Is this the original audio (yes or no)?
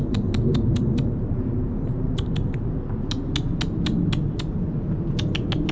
yes